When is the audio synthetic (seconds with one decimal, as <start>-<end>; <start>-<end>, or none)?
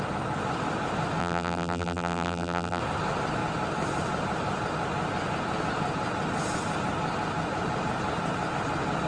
1.2-2.8